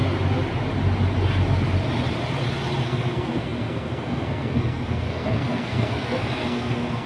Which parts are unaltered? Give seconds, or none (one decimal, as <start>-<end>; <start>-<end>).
0.0-2.8